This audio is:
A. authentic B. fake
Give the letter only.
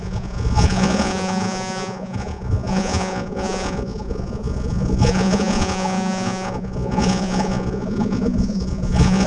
B